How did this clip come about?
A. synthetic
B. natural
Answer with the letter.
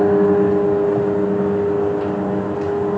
B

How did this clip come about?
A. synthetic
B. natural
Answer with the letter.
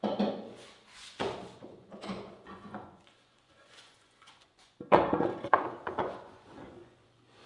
A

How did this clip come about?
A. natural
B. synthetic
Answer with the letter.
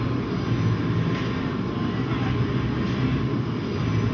A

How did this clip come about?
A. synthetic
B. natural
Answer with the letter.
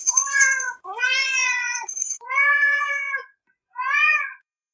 A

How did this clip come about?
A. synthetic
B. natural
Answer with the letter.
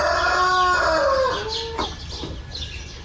B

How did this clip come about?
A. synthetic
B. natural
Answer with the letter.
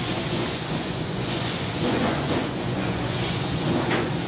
A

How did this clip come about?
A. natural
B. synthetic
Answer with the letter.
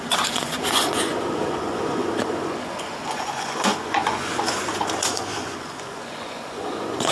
B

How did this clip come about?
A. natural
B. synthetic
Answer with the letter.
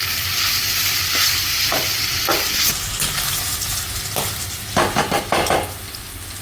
A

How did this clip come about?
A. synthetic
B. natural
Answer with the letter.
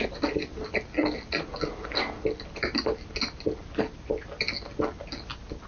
B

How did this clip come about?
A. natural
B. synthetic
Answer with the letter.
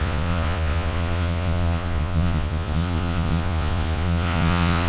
B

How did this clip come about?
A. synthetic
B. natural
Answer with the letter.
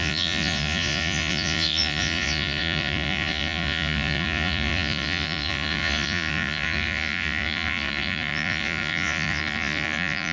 A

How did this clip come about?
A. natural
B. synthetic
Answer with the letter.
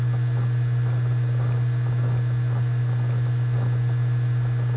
A